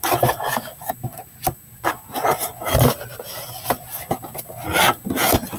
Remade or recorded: recorded